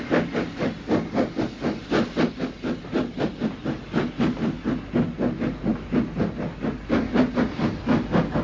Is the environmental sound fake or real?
real